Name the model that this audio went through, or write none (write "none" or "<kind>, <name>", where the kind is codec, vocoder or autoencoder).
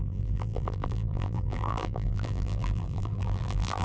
vocoder, BigVGAN v2